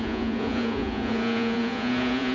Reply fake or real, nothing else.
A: fake